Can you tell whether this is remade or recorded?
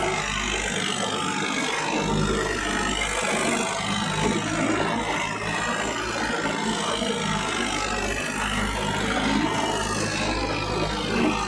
recorded